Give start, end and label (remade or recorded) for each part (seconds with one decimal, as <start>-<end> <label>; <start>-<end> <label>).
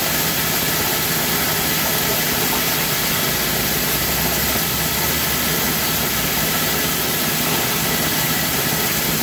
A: 0.0-9.2 recorded